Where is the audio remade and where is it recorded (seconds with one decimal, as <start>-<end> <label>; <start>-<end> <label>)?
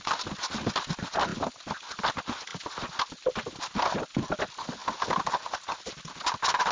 0.0-6.7 recorded